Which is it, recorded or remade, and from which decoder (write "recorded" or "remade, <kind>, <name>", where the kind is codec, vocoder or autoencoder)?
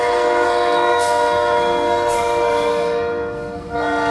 remade, codec, SNAC